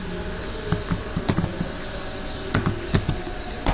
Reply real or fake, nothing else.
real